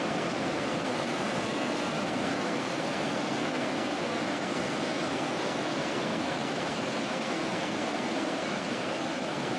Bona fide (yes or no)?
no